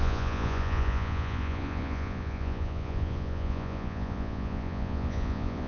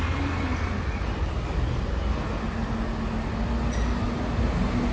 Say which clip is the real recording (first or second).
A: second